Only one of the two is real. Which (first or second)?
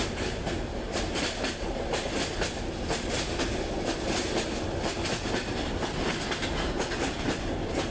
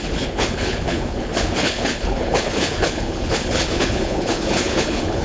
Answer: first